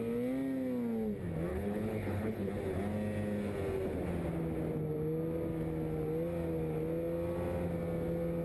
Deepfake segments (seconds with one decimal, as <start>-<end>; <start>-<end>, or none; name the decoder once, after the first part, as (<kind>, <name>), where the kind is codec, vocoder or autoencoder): 1.5-2.5 (codec, HILCodec)